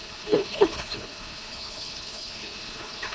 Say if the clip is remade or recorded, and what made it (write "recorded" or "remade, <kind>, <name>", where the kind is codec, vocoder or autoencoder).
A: remade, codec, HILCodec